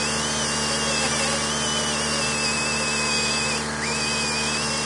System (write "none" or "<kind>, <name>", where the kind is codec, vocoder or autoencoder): none